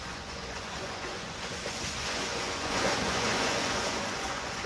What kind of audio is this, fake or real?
fake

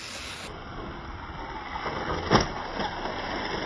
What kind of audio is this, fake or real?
real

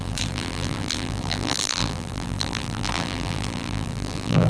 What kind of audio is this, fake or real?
fake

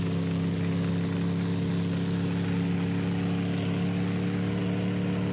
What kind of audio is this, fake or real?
real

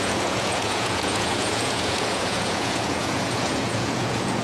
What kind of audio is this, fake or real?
fake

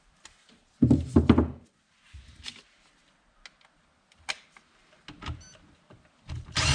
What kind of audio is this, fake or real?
real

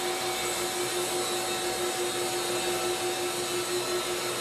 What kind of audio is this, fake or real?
real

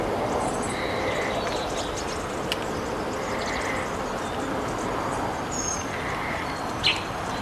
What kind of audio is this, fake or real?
real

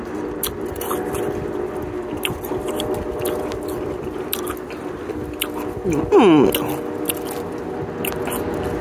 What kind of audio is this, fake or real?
real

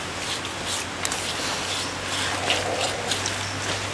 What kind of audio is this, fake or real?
real